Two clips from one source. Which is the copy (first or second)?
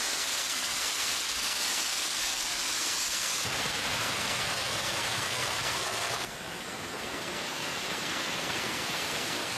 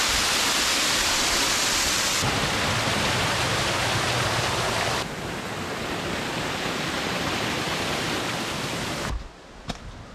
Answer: first